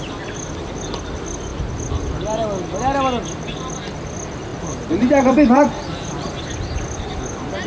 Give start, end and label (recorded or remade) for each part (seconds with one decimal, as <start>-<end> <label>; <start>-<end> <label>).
0.0-4.5 recorded; 4.5-7.0 remade; 7.0-7.7 recorded